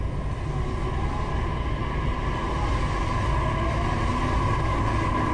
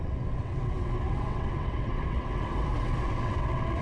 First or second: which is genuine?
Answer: first